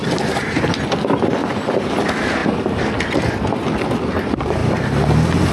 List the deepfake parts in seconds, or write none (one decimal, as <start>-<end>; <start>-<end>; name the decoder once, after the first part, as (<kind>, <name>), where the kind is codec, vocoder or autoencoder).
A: 0.0-0.8 (vocoder, BigVGAN v2); 1.4-1.9